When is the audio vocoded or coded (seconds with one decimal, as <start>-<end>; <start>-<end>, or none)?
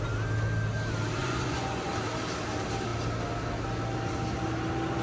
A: 1.2-1.9